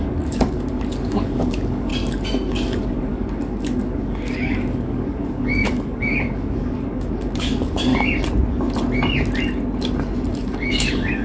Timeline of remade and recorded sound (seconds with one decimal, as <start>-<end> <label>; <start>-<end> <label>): 0.0-1.9 remade; 1.9-2.5 recorded; 2.5-7.9 remade; 7.9-10.3 recorded; 10.3-11.2 remade